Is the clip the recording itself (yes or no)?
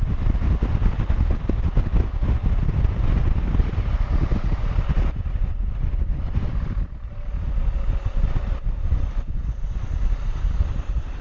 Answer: yes